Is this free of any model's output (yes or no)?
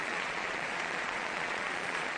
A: no